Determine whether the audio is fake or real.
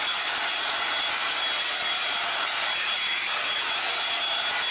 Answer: real